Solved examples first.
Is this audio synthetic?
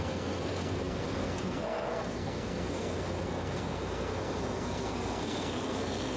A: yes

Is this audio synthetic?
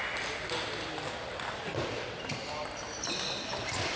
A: no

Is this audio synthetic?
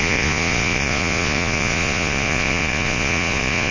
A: yes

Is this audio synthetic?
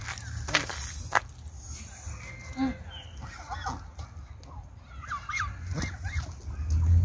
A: no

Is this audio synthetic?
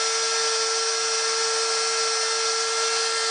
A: no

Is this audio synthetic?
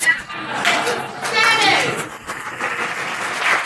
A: no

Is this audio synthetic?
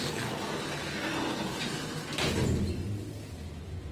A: no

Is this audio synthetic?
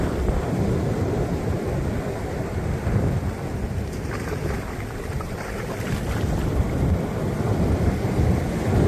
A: yes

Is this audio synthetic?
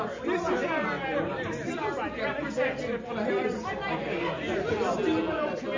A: no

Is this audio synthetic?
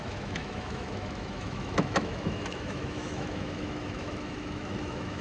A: yes